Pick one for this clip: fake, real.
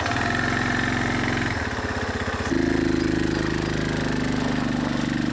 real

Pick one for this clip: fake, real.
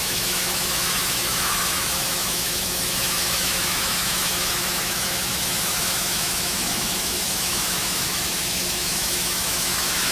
fake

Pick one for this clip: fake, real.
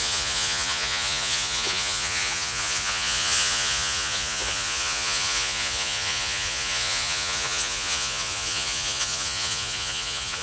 fake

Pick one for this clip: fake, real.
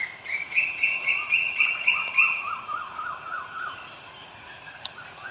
fake